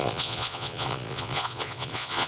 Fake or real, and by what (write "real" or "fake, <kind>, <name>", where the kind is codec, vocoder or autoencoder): fake, vocoder, Vocos